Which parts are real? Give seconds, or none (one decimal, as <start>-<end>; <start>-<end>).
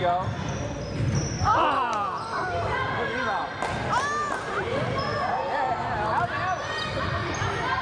0.0-7.8